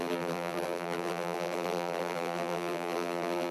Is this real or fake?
fake